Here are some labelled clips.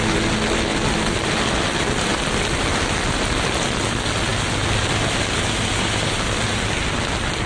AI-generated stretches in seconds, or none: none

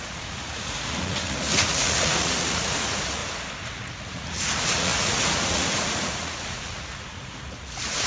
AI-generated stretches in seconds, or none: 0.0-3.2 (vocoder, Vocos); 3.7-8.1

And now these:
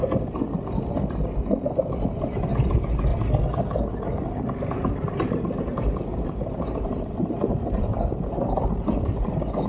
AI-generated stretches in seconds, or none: 2.1-3.1 (vocoder, BigVGAN v2); 4.6-9.7

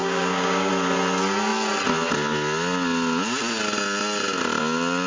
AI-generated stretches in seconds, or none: 0.0-0.7 (codec, DAC)

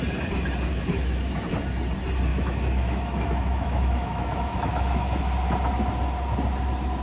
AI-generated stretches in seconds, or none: 0.7-1.6 (autoencoder, DAC-VAE); 2.3-5.2

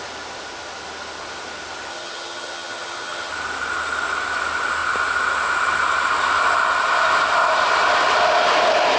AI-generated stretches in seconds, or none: 1.9-3.3 (vocoder, HiFi-GAN)